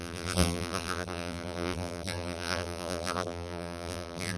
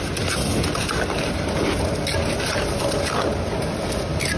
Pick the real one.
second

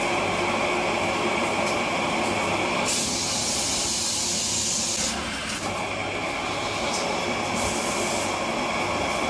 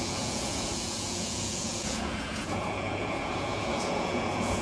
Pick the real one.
first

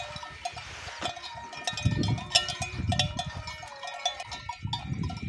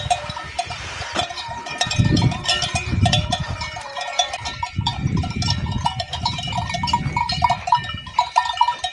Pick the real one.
first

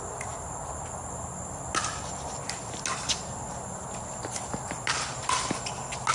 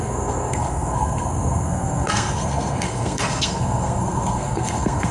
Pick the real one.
first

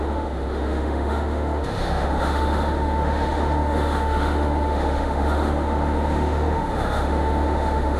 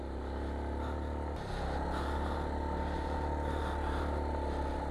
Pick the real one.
second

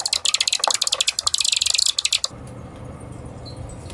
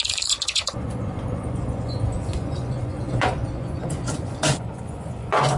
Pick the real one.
first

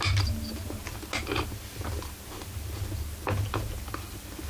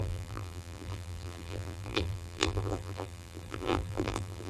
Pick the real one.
first